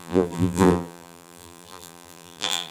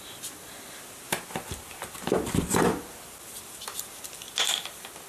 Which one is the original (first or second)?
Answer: second